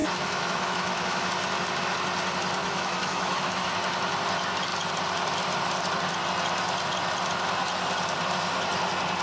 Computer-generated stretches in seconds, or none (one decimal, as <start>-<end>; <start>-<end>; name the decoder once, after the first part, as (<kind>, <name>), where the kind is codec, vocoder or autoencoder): 0.0-1.3 (autoencoder, DAC-VAE); 2.6-3.7